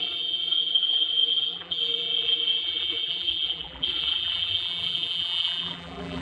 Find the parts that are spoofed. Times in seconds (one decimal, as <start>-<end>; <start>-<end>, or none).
0.0-6.2